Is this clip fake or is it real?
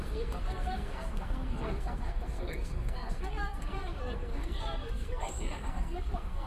fake